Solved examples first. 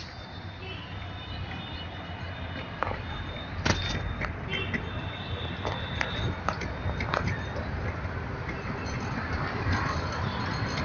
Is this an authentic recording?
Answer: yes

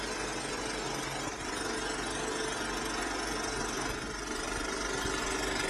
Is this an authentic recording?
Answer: yes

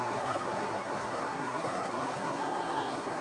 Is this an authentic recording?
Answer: no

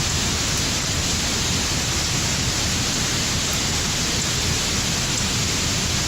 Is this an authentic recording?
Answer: yes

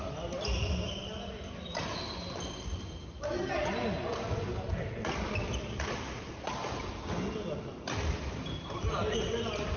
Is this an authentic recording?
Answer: yes